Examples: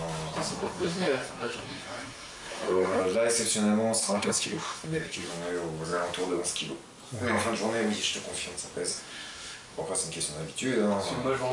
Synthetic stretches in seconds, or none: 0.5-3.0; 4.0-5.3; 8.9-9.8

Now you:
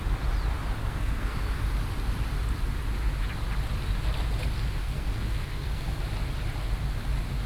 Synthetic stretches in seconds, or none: 0.8-1.6; 4.8-6.0

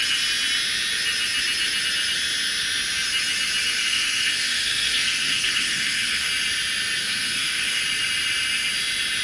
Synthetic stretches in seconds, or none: 3.8-6.3; 7.0-7.8

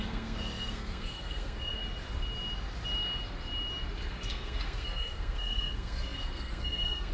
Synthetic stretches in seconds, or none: 0.0-1.8; 4.1-7.1

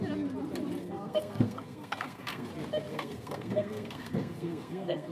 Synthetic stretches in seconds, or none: 0.8-2.5; 2.9-5.1

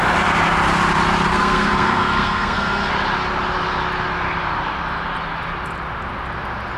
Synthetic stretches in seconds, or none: 1.3-2.9